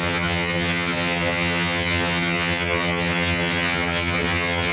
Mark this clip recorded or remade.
remade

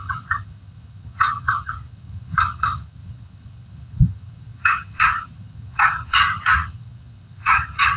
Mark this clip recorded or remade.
remade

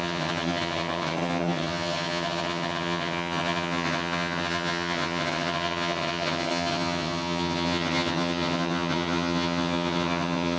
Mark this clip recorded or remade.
remade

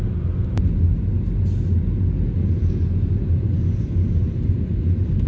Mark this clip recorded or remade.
recorded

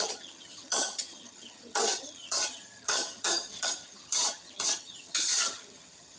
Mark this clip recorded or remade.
remade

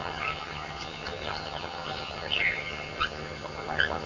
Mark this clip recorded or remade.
remade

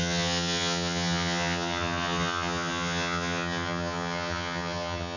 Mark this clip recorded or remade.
remade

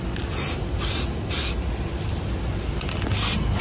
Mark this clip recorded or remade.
recorded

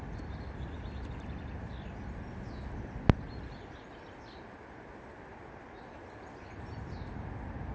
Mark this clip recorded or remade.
recorded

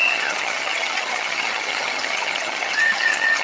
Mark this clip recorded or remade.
remade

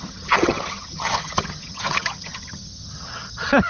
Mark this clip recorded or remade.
remade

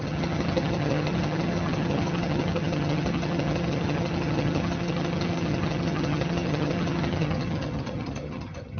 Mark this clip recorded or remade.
remade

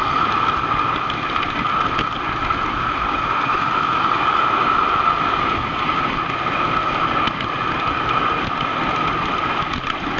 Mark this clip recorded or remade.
recorded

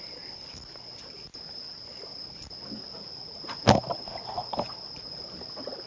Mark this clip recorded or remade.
recorded